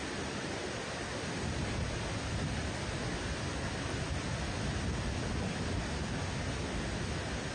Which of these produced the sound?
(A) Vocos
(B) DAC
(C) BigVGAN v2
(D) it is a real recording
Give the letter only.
D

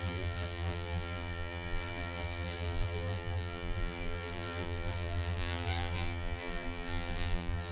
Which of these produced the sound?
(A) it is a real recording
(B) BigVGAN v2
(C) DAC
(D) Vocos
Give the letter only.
B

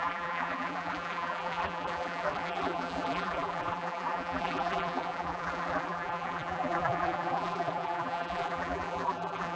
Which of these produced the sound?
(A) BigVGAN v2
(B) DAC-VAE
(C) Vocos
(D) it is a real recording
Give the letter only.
A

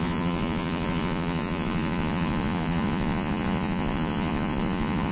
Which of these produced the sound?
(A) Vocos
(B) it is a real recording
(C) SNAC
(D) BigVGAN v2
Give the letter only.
A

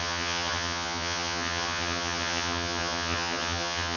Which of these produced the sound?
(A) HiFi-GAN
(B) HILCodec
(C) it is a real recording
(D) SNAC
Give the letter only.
A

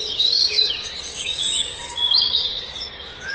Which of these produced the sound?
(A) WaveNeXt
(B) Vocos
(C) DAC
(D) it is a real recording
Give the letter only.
C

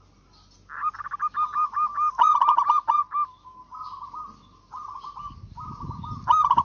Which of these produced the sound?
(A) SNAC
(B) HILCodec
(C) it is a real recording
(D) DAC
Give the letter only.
C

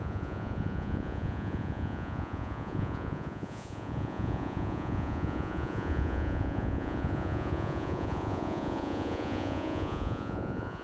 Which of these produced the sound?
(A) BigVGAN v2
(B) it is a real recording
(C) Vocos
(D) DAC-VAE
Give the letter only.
C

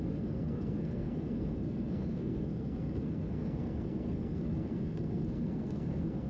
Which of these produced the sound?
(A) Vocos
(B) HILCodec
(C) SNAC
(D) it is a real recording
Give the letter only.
C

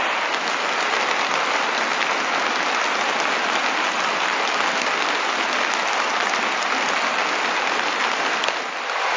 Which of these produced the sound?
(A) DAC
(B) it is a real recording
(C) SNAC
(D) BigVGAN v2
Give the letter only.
B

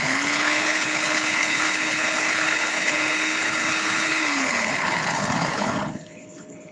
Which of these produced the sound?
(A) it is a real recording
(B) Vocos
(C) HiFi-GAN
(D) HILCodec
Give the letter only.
D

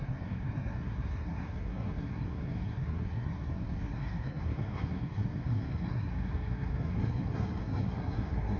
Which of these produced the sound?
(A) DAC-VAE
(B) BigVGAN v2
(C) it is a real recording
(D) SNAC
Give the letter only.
D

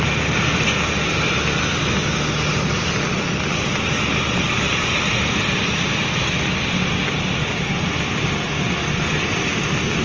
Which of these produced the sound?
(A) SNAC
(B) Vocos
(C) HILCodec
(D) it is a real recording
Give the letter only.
D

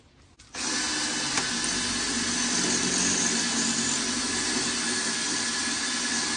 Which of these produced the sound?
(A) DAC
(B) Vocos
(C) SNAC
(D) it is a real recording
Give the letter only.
D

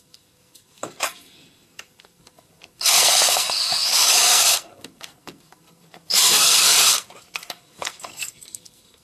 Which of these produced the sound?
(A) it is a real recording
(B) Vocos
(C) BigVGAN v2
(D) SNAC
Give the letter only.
D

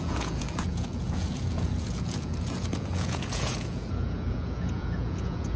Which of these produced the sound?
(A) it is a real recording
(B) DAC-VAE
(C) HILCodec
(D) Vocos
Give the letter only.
D